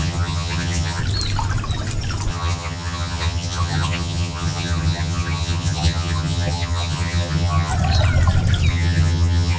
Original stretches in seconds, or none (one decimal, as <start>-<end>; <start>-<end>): 1.0-2.3; 7.7-8.7